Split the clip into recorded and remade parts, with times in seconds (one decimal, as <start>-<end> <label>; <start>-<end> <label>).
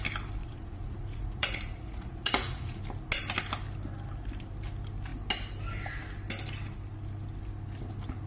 0.0-0.4 recorded; 0.4-2.8 remade; 2.8-8.3 recorded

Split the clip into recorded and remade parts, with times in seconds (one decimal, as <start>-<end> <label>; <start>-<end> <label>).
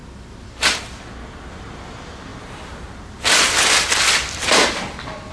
0.0-5.3 recorded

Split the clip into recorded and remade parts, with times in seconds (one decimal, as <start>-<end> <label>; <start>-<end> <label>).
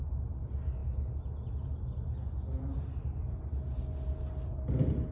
0.0-5.1 recorded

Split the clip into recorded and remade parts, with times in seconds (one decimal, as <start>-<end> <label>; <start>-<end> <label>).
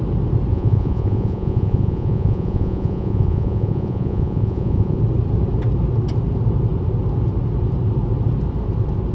0.0-0.5 recorded; 0.5-5.0 remade; 5.0-9.1 recorded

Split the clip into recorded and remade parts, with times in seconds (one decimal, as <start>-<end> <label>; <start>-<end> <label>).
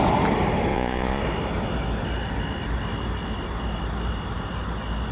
0.0-0.7 recorded; 0.7-1.2 remade; 1.2-5.1 recorded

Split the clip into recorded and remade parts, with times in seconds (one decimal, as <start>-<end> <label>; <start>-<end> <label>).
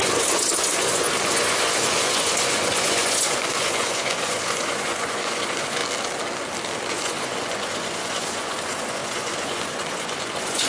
0.0-5.8 remade; 5.8-6.9 recorded; 6.9-10.7 remade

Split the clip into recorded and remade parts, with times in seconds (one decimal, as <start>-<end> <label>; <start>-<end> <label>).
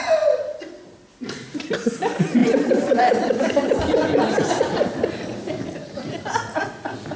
0.0-7.2 recorded